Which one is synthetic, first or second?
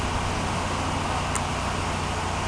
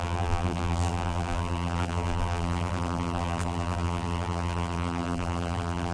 second